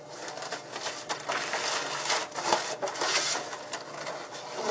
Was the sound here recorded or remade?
recorded